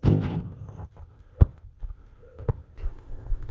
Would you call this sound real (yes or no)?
no